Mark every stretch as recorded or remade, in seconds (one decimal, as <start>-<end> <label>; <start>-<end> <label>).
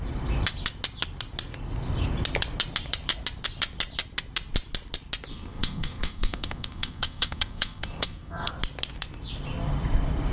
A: 0.0-5.3 recorded; 5.3-8.5 remade; 8.5-10.3 recorded